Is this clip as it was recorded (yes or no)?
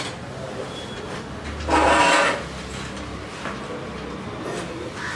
yes